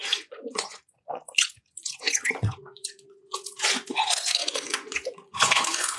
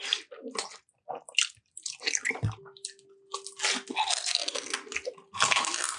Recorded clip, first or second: second